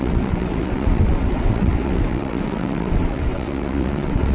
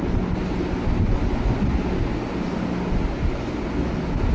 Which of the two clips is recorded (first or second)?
second